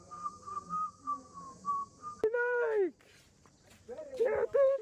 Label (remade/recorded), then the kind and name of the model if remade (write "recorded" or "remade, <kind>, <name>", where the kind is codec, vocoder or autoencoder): remade, vocoder, BigVGAN v2